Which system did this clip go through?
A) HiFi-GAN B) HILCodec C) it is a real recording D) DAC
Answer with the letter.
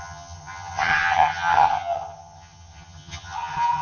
A